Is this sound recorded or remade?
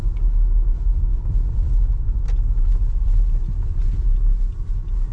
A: recorded